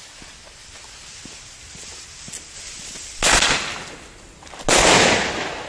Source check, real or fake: real